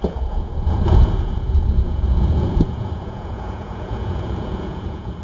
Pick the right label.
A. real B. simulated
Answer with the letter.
B